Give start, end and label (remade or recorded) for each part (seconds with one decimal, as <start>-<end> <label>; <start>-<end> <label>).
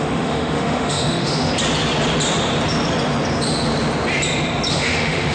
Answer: 0.0-1.5 remade; 1.5-4.7 recorded; 4.7-5.3 remade